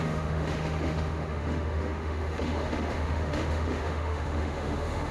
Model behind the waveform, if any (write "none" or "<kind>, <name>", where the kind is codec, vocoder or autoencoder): autoencoder, DAC-VAE